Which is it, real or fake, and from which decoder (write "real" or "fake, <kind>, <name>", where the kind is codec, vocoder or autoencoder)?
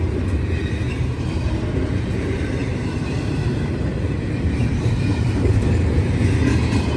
fake, vocoder, BigVGAN v2